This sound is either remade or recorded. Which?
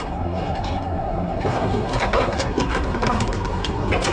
remade